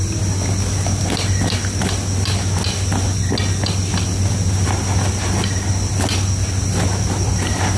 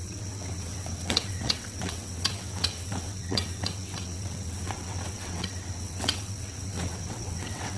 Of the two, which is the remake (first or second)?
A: second